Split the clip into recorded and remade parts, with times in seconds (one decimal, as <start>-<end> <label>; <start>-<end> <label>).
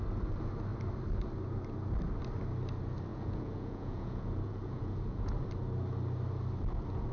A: 0.0-3.1 recorded; 3.1-5.3 remade; 5.3-7.1 recorded